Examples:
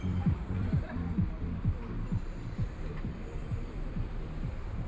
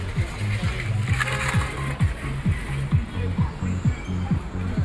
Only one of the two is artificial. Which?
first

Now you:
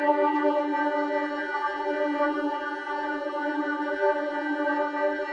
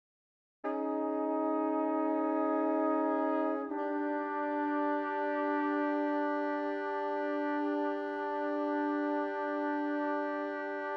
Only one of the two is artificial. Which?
first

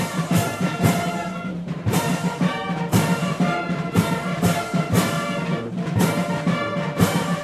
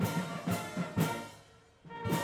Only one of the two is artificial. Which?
first